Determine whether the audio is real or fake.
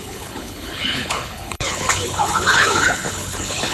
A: fake